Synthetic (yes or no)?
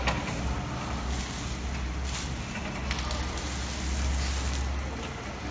no